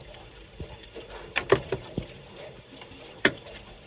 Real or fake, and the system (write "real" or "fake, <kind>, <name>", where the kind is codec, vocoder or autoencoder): fake, vocoder, BigVGAN v2